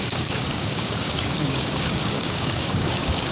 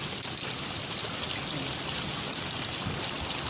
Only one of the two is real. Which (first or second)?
second